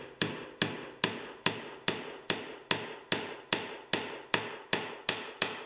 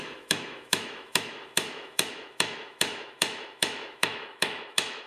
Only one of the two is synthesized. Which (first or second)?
second